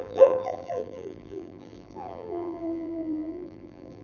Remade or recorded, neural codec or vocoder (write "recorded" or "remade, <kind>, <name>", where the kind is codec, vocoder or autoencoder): remade, vocoder, BigVGAN v2